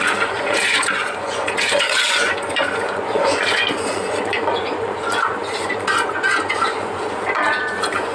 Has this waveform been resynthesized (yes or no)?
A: yes